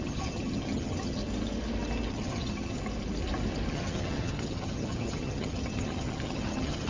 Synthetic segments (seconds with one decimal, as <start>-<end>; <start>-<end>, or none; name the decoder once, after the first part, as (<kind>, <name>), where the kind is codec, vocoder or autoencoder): 0.0-1.2 (vocoder, HiFi-GAN); 2.1-2.8; 3.7-6.9